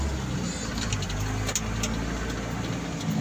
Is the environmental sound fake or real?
real